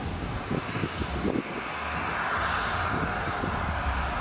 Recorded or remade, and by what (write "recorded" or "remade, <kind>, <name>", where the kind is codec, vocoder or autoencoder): recorded